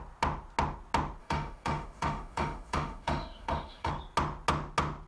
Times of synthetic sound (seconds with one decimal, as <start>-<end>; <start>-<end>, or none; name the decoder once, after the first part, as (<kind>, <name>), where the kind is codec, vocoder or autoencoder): 1.2-3.9 (autoencoder, DAC-VAE)

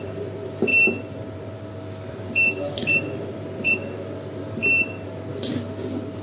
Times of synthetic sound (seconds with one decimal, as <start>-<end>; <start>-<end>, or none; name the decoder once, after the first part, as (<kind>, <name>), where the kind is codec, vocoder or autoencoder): 0.0-0.7 (vocoder, BigVGAN v2); 2.1-6.2